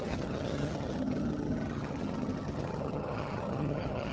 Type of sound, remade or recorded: remade